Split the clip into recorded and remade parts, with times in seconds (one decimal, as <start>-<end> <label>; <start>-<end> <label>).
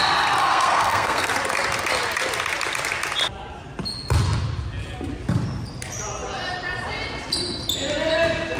0.0-0.4 recorded; 0.4-1.3 remade; 1.3-8.6 recorded